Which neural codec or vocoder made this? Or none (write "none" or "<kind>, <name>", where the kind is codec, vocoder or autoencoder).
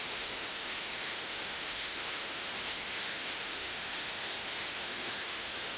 autoencoder, DAC-VAE